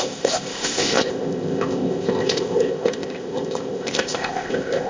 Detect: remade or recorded remade